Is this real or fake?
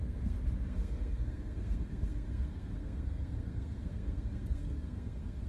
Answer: fake